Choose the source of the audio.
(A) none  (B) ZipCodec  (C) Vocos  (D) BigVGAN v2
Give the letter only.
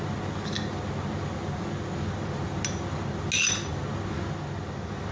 A